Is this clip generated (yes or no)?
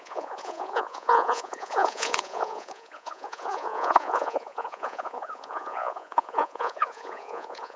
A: yes